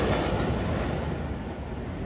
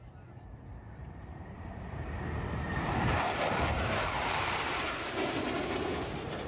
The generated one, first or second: second